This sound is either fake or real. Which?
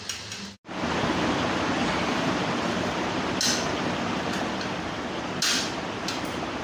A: real